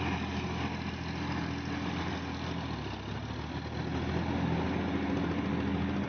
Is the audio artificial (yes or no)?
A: no